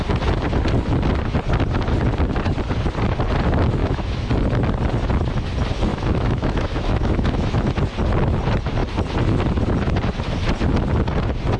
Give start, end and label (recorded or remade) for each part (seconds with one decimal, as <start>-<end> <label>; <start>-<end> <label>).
0.0-3.8 recorded; 3.8-4.3 remade; 4.3-5.9 recorded; 5.9-7.7 remade; 7.7-11.6 recorded